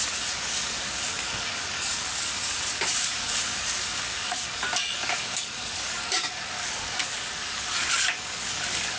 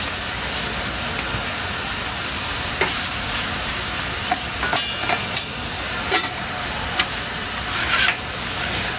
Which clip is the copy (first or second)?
first